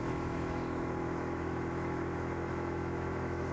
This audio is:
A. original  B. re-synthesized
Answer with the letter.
B